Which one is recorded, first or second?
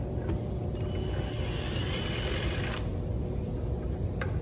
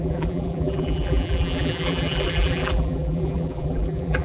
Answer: first